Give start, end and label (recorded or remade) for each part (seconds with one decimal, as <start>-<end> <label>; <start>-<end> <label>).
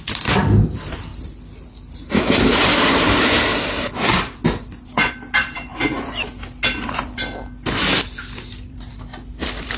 0.0-1.1 remade; 1.1-5.1 recorded; 5.1-5.7 remade; 5.7-7.8 recorded; 7.8-9.8 remade